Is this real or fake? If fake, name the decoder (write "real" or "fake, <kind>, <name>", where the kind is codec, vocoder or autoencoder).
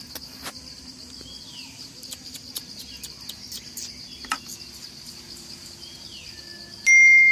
real